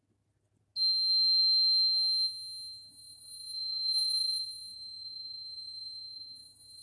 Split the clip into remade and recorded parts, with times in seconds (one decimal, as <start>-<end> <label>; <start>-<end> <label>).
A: 0.0-3.0 recorded; 3.0-6.8 remade